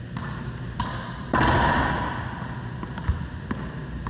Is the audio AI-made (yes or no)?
no